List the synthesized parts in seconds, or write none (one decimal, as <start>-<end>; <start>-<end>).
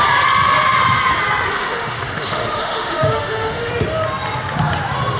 1.5-3.7